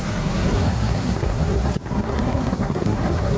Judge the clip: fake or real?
fake